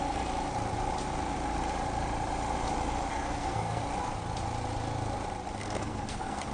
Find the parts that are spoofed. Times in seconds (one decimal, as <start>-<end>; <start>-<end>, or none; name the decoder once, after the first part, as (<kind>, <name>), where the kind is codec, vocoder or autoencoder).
3.1-3.8 (codec, SNAC); 5.6-6.5